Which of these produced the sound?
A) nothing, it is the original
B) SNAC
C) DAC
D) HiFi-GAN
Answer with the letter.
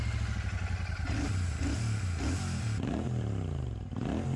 A